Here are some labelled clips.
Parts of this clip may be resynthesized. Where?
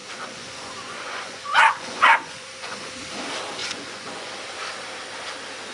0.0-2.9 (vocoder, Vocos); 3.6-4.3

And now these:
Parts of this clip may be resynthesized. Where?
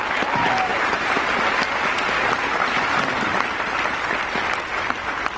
0.7-1.3 (vocoder, BigVGAN v2)